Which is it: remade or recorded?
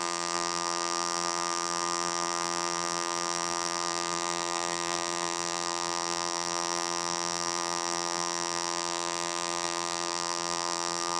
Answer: remade